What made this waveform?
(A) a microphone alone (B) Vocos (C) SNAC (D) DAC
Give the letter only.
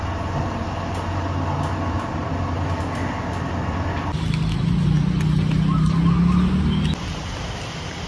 A